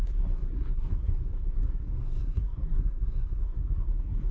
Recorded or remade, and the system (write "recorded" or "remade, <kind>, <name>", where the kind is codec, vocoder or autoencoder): remade, codec, SNAC